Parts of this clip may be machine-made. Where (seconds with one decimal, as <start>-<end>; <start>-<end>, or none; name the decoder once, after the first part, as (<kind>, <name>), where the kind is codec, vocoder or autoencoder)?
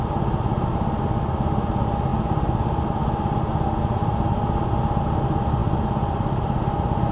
none